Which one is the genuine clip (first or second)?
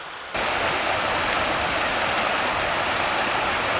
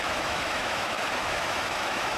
first